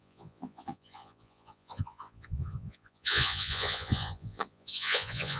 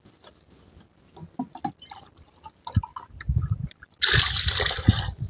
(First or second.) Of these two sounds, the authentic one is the second